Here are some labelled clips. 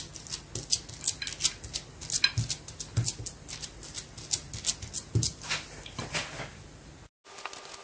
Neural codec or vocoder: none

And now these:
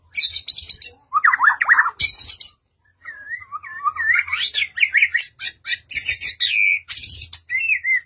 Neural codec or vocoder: none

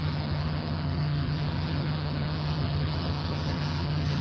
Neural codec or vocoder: vocoder, HiFi-GAN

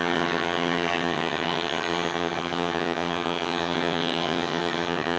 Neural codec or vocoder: vocoder, HiFi-GAN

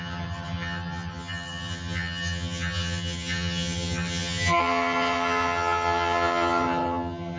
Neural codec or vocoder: vocoder, HiFi-GAN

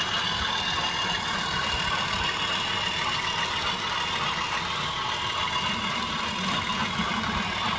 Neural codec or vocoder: none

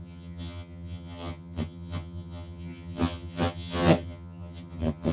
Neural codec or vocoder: vocoder, HiFi-GAN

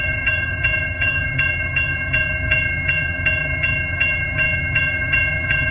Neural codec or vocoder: vocoder, HiFi-GAN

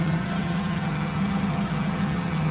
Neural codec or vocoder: vocoder, HiFi-GAN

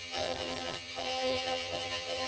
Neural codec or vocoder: vocoder, HiFi-GAN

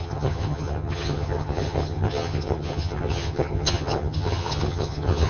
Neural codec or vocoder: vocoder, HiFi-GAN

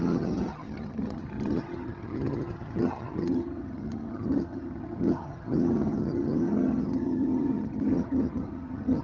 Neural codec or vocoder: vocoder, HiFi-GAN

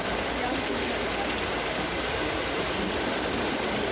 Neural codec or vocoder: none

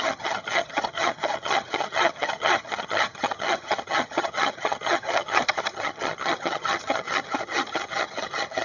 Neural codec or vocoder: vocoder, HiFi-GAN